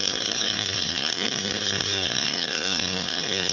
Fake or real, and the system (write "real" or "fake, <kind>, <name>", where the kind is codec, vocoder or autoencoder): fake, codec, SNAC